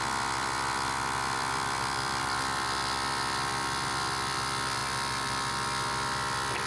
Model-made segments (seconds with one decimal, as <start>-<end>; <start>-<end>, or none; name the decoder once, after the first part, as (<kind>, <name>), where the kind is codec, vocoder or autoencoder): none